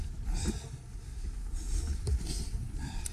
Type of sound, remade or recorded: recorded